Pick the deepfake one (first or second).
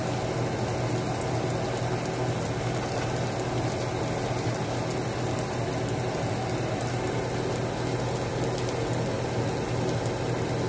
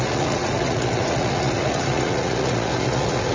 second